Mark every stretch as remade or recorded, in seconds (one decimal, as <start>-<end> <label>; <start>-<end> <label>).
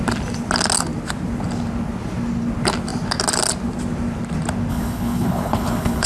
0.0-4.7 recorded; 4.7-6.1 remade